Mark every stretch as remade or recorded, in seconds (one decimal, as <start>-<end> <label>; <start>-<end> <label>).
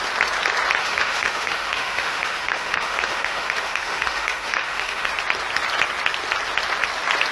0.0-0.8 recorded; 0.8-5.1 remade; 5.1-7.3 recorded